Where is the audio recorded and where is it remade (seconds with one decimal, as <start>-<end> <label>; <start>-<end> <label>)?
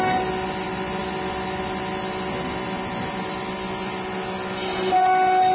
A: 0.0-5.5 recorded